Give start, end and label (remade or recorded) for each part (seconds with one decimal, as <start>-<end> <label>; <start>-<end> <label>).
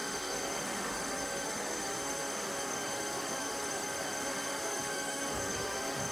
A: 0.0-6.1 remade